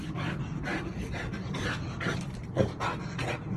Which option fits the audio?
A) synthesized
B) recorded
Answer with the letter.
B